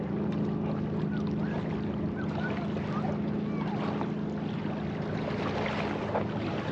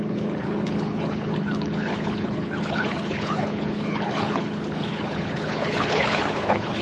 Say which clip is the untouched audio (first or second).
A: first